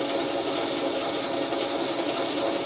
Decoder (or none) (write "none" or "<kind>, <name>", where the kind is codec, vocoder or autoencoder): none